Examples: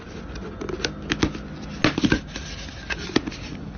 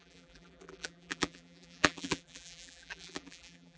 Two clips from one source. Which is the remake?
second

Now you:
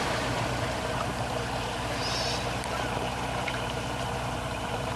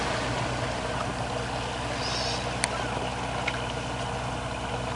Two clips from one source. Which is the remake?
first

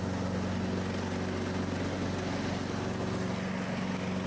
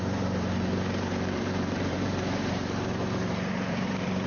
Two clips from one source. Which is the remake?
second